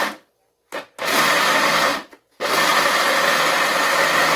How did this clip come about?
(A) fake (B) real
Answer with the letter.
B